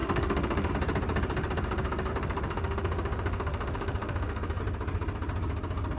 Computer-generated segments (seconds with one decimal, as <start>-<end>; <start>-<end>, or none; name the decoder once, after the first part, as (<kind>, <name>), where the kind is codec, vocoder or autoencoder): 0.0-0.7 (autoencoder, DAC-VAE); 2.1-4.6